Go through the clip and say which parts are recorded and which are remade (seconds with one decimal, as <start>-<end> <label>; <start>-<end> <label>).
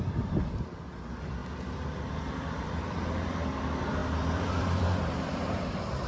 0.0-1.4 remade; 1.4-2.1 recorded; 2.1-6.1 remade